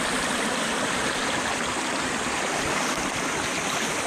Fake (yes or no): no